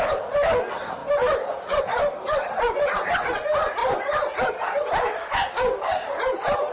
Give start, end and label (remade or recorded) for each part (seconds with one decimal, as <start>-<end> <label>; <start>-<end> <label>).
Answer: 0.0-5.2 recorded; 5.2-6.1 remade; 6.1-6.7 recorded